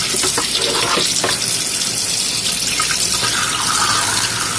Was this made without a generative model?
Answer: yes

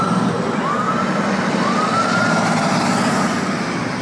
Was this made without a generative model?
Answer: yes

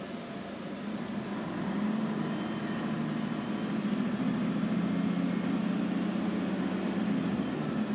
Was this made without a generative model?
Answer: yes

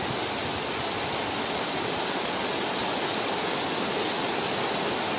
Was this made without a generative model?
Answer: yes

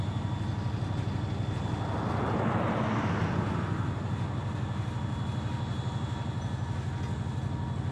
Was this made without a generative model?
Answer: yes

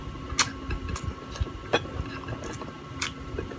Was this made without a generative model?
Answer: yes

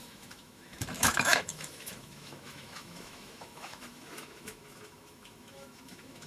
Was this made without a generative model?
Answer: no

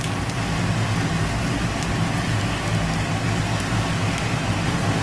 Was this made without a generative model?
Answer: yes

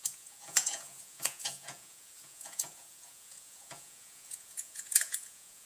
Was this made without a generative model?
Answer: no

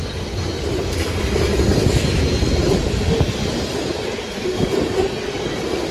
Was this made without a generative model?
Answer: yes